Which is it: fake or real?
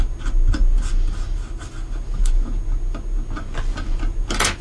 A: real